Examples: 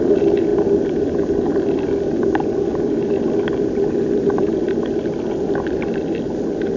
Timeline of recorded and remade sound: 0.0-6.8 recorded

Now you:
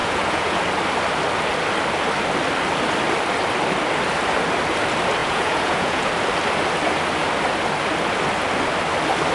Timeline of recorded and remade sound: 0.0-0.6 remade; 0.6-5.2 recorded; 5.2-6.1 remade; 6.1-9.3 recorded